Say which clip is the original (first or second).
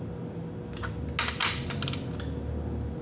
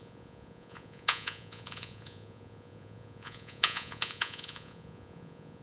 first